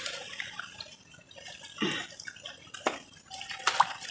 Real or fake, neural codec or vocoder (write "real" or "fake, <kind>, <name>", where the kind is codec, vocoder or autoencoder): fake, vocoder, BigVGAN v2